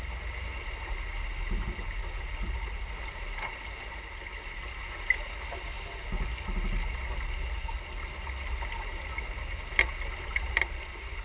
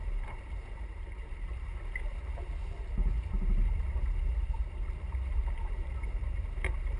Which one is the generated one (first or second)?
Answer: second